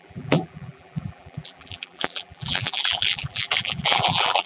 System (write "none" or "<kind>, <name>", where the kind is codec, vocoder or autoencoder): vocoder, BigVGAN v2